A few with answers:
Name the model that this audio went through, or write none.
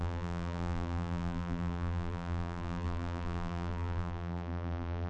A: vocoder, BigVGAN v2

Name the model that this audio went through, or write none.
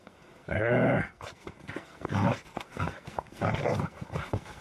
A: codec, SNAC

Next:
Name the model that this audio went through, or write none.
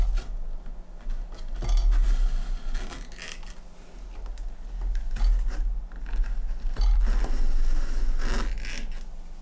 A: none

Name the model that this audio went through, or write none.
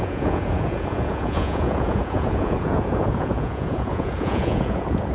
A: vocoder, Vocos